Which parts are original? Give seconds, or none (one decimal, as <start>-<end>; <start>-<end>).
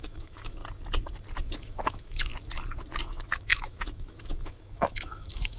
0.6-1.5; 2.3-3.0